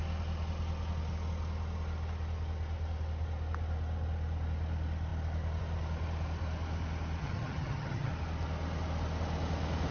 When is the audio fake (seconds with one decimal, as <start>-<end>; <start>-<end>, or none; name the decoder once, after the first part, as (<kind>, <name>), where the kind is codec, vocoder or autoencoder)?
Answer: 7.2-8.1 (vocoder, HiFi-GAN)